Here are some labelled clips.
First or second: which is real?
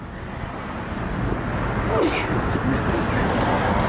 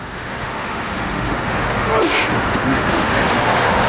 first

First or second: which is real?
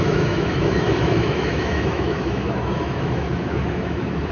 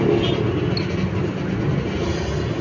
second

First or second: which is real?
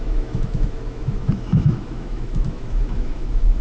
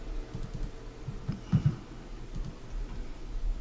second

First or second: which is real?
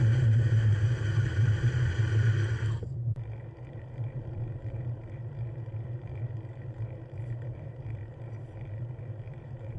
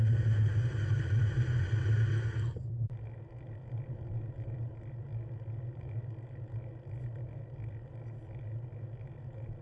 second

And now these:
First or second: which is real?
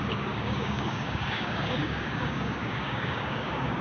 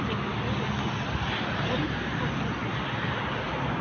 second